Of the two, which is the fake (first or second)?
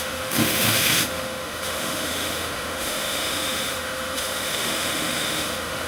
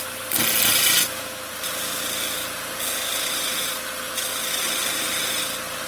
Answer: first